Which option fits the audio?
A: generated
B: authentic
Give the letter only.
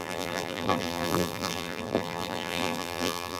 A